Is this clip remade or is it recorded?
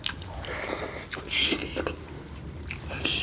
recorded